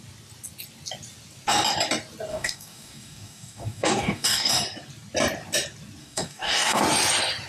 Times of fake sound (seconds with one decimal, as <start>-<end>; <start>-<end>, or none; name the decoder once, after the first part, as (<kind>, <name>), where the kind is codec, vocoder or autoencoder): 2.3-4.5 (codec, DAC); 6.0-6.8